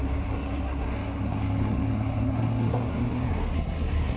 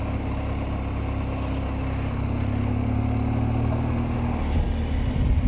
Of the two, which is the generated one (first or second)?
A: first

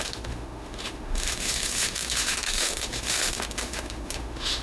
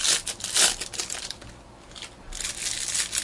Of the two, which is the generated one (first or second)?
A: first